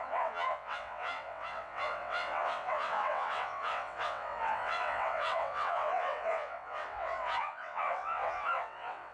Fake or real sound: fake